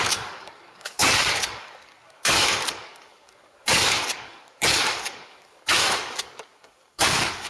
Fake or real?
fake